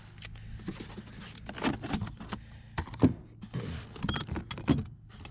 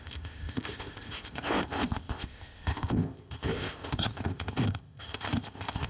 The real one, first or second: first